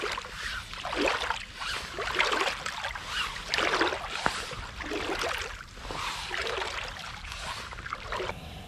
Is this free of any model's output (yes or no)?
yes